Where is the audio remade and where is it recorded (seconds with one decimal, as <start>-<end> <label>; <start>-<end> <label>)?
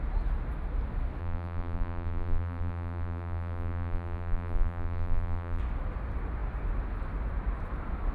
0.0-1.2 recorded; 1.2-5.6 remade; 5.6-8.1 recorded